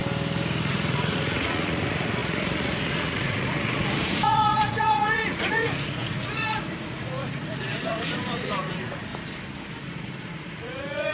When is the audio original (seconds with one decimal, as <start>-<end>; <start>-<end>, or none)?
0.0-0.7; 9.1-9.8